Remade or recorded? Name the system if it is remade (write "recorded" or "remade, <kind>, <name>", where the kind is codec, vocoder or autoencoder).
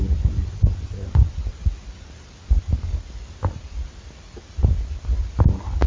recorded